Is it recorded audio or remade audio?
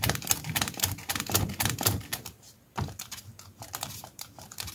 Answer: remade